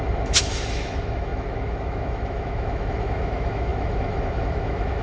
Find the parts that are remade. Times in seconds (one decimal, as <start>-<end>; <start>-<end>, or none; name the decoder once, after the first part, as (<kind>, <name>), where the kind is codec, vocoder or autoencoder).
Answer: 0.0-5.0 (autoencoder, DAC-VAE)